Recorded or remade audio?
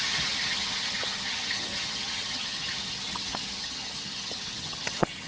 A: remade